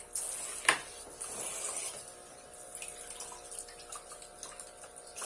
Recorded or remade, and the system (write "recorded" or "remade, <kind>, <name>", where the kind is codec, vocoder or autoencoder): recorded